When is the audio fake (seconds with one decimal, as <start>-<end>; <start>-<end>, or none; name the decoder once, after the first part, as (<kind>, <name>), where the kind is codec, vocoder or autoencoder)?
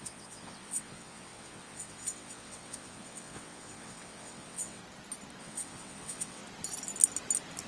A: 0.0-4.8 (vocoder, WaveNeXt); 5.4-6.4